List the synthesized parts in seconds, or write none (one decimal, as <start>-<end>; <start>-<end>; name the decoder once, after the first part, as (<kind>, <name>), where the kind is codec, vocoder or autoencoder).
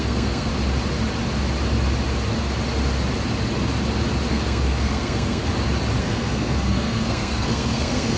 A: 0.0-0.5 (codec, SNAC); 4.3-5.5; 6.0-8.2